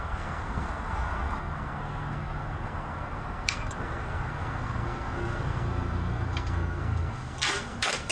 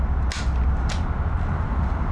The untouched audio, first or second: second